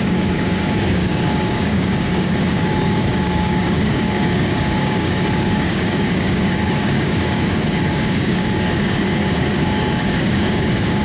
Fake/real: fake